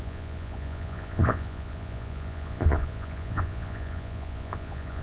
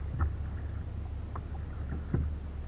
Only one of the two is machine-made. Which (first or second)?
first